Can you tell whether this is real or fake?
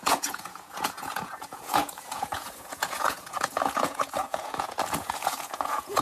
fake